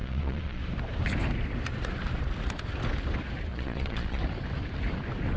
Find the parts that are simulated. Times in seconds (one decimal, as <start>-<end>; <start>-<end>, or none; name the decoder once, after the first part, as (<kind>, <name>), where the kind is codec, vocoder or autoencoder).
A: 0.0-0.6 (vocoder, Vocos); 3.5-4.2